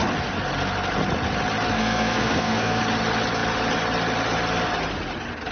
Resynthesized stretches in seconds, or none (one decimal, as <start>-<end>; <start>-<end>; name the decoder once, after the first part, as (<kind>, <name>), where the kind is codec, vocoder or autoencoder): 1.8-2.8 (codec, SNAC)